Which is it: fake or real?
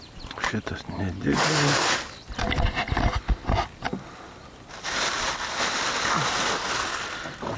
real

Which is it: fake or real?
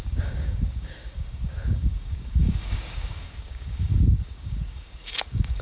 fake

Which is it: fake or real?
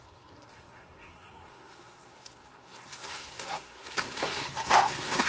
fake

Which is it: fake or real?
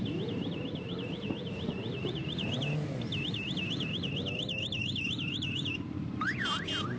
fake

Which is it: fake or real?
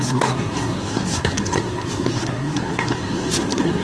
fake